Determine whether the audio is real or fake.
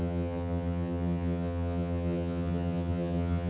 fake